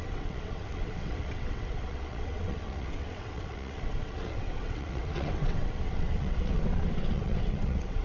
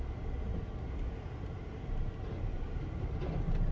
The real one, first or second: second